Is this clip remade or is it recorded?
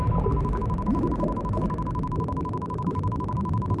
recorded